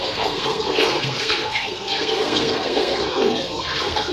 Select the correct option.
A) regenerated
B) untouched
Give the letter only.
A